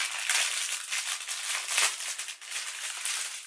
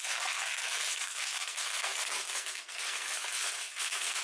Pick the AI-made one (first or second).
second